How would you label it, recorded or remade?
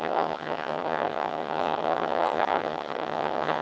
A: remade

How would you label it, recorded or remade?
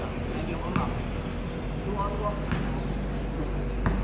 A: recorded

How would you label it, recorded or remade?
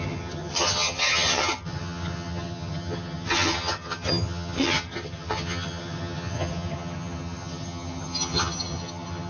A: remade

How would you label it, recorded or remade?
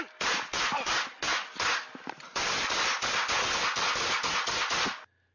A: recorded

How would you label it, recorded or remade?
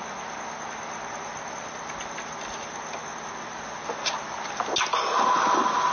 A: recorded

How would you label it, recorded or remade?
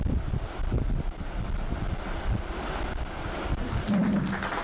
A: recorded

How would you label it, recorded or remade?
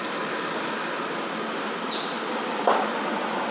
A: recorded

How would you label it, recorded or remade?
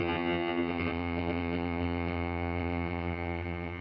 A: remade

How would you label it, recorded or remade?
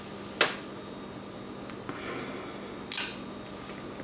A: recorded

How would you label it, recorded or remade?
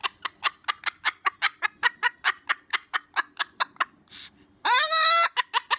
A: recorded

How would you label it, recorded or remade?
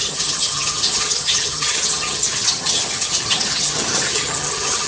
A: remade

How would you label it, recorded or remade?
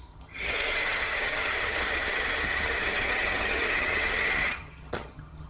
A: remade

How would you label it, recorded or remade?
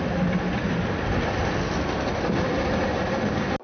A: recorded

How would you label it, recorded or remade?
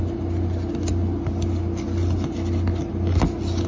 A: recorded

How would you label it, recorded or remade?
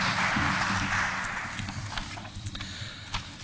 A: recorded